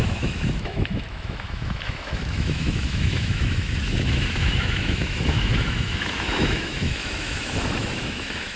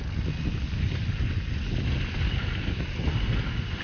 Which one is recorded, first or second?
second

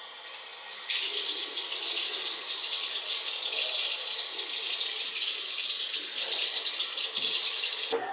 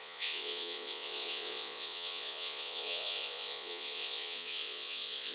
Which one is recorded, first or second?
first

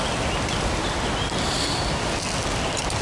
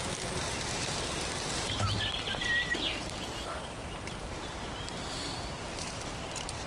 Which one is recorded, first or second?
first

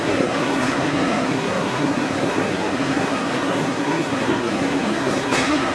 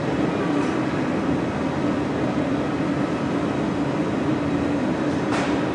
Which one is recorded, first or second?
second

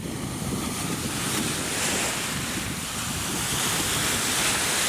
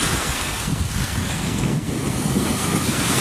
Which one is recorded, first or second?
first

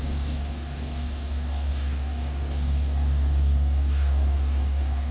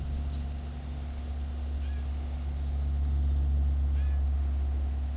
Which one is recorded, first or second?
second